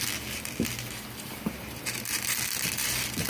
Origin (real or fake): real